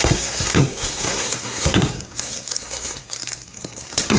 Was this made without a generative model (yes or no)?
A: no